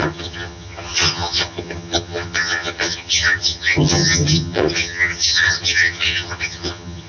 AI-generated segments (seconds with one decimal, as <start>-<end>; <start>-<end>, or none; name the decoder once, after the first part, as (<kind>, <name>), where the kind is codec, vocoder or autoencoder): 0.0-7.1 (vocoder, HiFi-GAN)